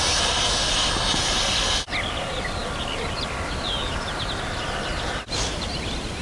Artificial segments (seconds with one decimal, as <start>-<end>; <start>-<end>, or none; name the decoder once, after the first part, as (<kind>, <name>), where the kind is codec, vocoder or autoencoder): none